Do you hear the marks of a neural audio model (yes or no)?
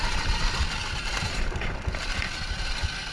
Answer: no